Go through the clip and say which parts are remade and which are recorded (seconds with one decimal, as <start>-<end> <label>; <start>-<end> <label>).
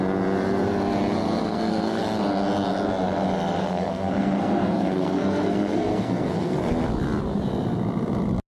0.0-1.4 recorded; 1.4-2.0 remade; 2.0-3.6 recorded; 3.6-6.7 remade; 6.7-8.5 recorded